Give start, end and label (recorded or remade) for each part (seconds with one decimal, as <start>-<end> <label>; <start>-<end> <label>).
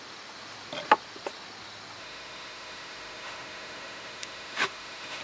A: 0.0-2.0 recorded; 2.0-5.2 remade